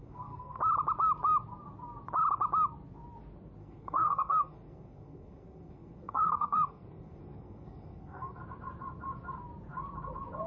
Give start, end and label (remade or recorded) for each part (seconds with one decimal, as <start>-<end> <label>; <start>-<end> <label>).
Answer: 0.0-0.6 remade; 0.6-3.6 recorded; 3.6-8.4 remade; 8.4-10.5 recorded